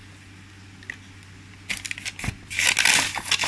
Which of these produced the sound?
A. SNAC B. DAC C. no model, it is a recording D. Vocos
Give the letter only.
C